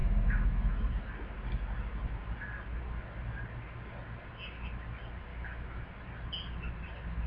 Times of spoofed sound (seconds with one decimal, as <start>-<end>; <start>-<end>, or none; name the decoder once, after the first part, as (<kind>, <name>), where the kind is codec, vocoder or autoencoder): 0.0-0.9 (autoencoder, DAC-VAE); 5.3-5.9

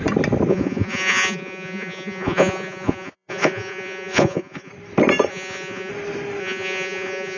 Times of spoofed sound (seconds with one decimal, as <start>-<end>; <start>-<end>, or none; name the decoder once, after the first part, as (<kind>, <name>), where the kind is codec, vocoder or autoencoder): 0.5-4.7 (vocoder, Vocos); 5.3-5.9; 6.4-7.4